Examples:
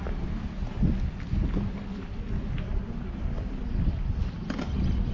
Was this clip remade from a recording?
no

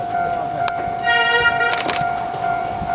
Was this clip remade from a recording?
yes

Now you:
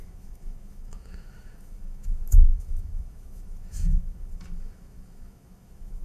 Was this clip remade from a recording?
yes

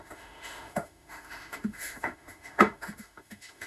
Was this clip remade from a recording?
yes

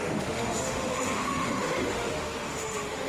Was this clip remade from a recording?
yes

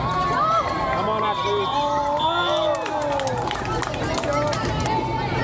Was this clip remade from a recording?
no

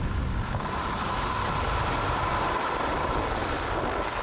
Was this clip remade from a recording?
no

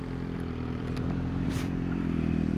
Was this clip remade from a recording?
yes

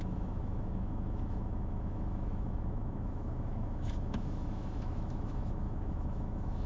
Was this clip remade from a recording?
yes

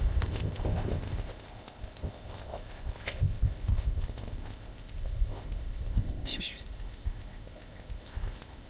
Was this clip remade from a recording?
yes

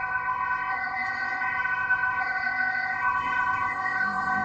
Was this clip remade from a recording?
yes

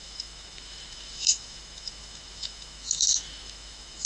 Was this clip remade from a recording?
yes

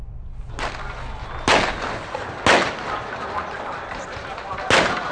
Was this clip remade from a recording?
no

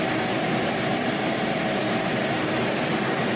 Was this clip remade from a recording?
yes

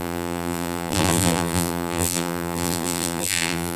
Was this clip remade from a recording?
yes